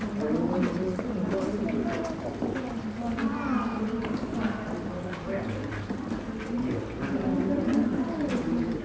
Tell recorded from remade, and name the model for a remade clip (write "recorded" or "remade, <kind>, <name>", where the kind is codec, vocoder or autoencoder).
recorded